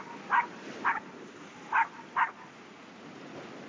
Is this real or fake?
real